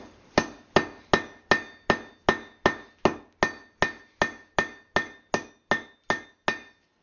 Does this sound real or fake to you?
real